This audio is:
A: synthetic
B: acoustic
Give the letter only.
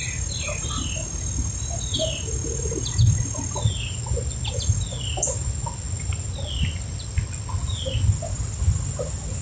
B